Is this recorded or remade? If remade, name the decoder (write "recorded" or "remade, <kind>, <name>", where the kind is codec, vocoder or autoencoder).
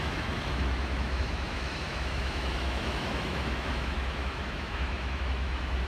remade, autoencoder, DAC-VAE